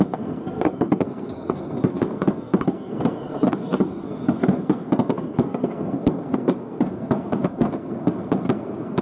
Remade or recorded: remade